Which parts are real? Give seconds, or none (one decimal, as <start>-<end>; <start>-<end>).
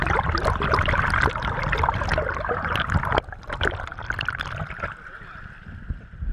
0.0-6.3